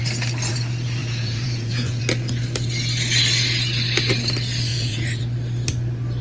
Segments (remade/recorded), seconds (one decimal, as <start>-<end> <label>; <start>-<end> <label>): 0.0-1.0 recorded; 1.0-2.0 remade; 2.0-4.7 recorded; 4.7-5.2 remade; 5.2-6.2 recorded

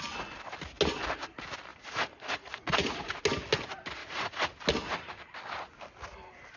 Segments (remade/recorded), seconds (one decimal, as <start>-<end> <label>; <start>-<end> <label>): 0.0-1.7 recorded; 1.7-3.2 remade; 3.2-4.0 recorded; 4.0-4.6 remade; 4.6-6.6 recorded